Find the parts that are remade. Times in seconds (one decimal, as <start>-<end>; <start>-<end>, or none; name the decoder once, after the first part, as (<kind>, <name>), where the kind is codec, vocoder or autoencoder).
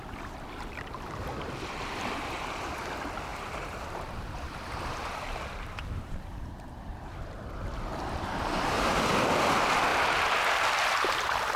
3.3-6.7 (vocoder, BigVGAN v2); 7.9-9.0